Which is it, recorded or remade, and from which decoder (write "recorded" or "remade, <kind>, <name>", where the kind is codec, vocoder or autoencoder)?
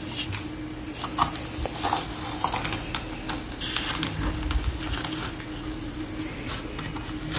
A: recorded